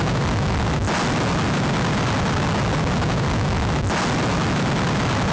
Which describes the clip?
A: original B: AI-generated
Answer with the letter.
A